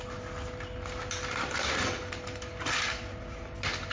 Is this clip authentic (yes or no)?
yes